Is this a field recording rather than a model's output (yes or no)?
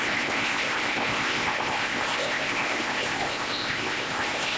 no